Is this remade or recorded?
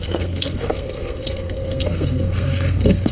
remade